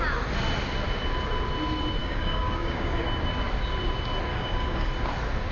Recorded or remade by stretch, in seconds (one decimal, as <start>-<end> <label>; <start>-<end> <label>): 0.0-2.0 recorded; 2.0-3.0 remade; 3.0-4.3 recorded; 4.3-4.9 remade; 4.9-5.5 recorded